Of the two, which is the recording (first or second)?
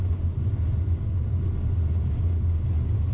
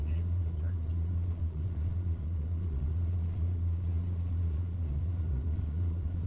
first